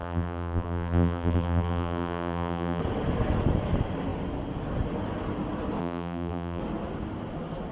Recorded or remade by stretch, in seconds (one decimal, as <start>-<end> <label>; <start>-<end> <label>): 0.0-2.8 remade; 2.8-5.8 recorded; 5.8-6.6 remade; 6.6-7.7 recorded